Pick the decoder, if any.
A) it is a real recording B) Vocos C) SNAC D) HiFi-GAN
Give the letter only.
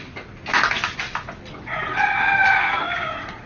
A